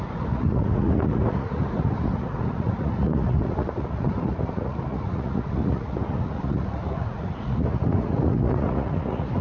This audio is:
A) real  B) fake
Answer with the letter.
B